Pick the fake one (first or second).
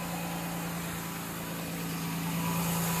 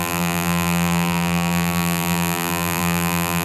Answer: second